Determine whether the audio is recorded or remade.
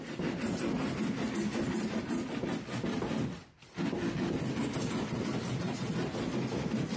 remade